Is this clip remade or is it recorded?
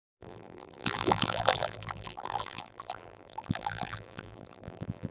remade